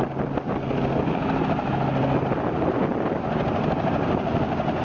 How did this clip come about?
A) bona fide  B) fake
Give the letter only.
A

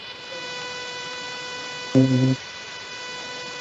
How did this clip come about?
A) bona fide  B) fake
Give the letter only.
B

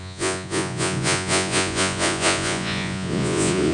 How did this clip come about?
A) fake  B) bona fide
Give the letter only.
A